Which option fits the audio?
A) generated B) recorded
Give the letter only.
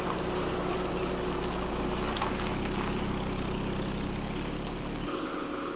B